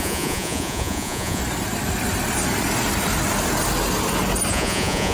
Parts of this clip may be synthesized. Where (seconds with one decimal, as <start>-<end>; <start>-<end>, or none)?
0.0-1.4; 4.5-5.1